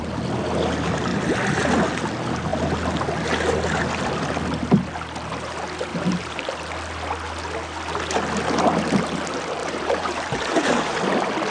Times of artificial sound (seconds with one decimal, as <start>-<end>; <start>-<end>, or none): 5.9-6.5; 9.6-11.0